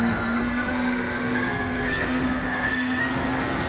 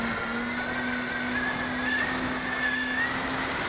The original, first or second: second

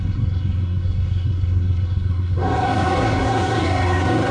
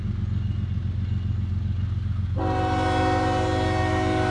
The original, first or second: second